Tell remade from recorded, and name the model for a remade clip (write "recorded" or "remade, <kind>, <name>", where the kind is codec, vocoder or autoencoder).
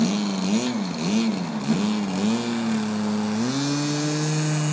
recorded